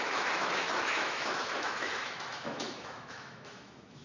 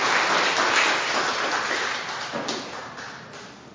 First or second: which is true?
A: second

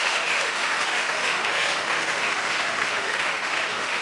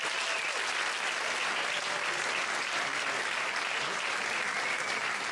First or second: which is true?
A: second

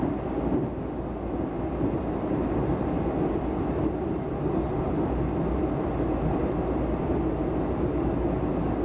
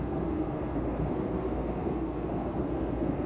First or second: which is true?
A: first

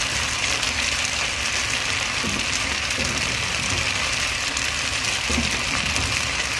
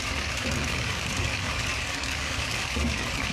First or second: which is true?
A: first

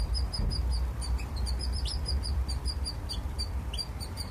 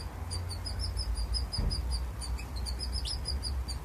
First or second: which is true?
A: second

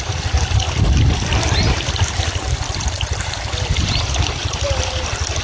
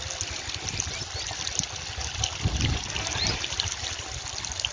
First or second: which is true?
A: second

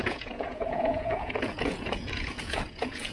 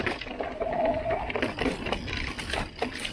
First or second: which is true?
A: second